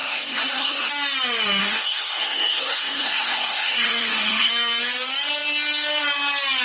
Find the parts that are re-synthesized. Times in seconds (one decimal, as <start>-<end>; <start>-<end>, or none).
0.0-0.9; 1.6-4.5